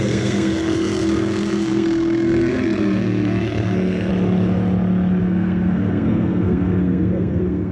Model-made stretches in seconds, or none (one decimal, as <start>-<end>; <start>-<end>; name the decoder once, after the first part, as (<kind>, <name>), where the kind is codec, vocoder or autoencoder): 0.0-4.1 (codec, SNAC); 5.2-7.7